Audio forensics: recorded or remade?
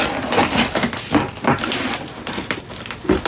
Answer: recorded